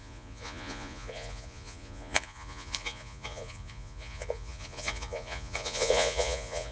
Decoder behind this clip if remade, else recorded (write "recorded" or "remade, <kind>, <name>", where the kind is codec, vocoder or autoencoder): remade, vocoder, Vocos